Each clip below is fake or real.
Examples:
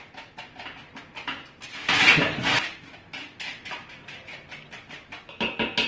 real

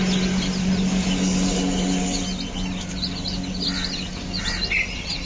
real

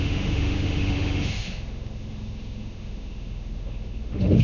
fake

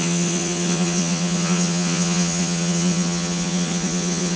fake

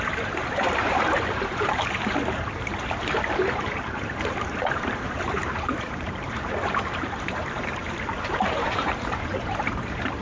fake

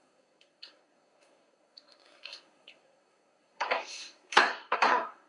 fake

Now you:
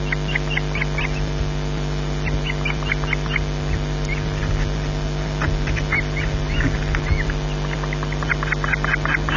real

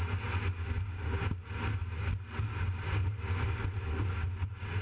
real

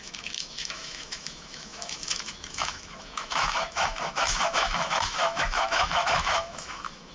fake